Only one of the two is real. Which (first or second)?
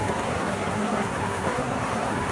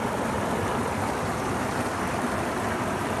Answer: second